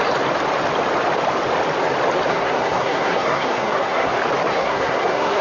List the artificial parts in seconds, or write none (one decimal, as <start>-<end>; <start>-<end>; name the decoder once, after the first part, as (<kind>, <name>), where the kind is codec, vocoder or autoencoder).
2.3-4.1 (codec, SNAC); 4.5-5.4